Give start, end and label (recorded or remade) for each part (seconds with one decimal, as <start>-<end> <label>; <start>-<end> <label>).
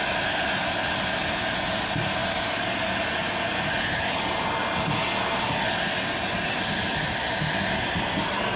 0.0-8.6 recorded